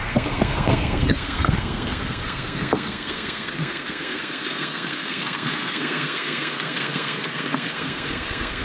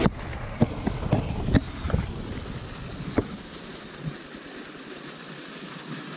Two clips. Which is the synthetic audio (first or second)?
first